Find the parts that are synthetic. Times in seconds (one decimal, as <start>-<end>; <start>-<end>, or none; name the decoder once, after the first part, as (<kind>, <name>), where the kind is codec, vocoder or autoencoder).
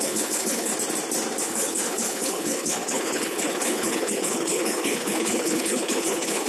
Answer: 0.0-0.7 (codec, HILCodec); 1.4-6.5